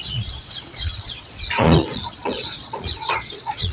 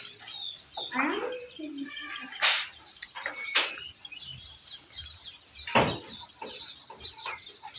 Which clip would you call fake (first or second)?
first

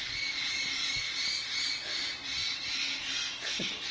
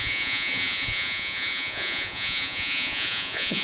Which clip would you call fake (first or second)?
second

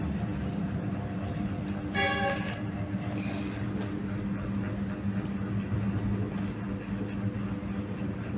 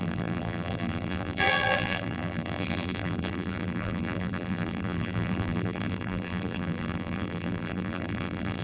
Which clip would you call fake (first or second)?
second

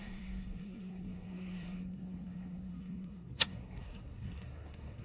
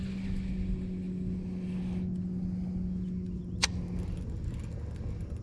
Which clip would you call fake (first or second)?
first